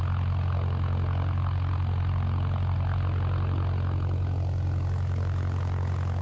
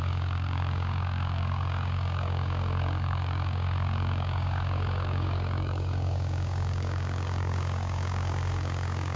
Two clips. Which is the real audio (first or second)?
first